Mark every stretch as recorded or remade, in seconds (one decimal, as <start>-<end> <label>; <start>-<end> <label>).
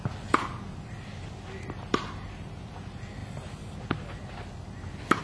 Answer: 0.0-5.2 recorded